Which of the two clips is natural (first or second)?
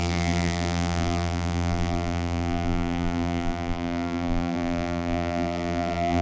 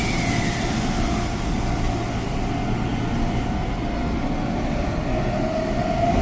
second